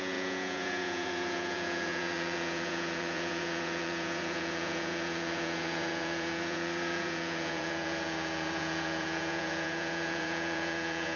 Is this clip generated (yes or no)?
yes